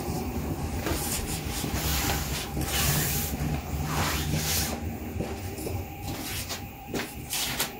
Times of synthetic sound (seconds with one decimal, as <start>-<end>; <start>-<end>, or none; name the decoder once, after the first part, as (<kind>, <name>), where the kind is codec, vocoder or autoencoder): 0.0-1.9 (vocoder, BigVGAN v2); 6.6-7.8